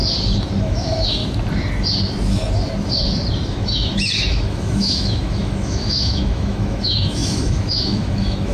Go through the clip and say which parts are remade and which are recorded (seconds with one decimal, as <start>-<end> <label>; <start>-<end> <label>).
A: 0.0-0.6 recorded; 0.6-1.2 remade; 1.2-3.5 recorded; 3.5-8.5 remade